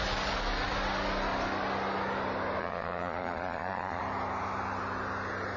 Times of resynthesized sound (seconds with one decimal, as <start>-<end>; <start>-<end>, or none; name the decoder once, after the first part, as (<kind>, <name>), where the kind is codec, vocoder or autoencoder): 2.6-4.0 (vocoder, Vocos)